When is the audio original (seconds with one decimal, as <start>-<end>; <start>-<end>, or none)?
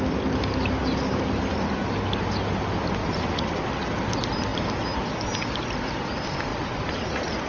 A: 0.0-3.0; 3.6-6.5